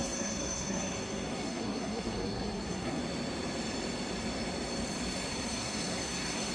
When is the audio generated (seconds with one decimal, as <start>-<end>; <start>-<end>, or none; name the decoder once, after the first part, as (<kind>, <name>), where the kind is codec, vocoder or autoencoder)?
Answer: 0.0-3.0 (codec, SNAC); 5.3-6.5